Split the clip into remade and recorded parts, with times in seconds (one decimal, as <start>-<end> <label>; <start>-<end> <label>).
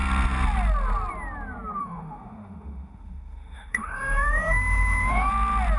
0.0-1.8 recorded; 1.8-5.3 remade; 5.3-5.8 recorded